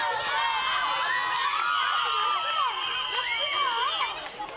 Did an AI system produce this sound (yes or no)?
no